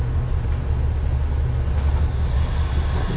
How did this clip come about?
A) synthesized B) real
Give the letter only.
B